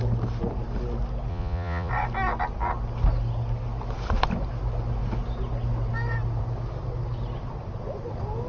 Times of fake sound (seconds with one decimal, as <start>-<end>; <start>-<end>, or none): 1.3-1.9